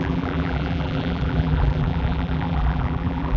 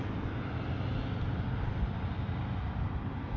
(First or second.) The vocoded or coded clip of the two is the first